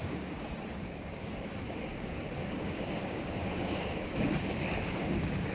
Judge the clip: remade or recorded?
remade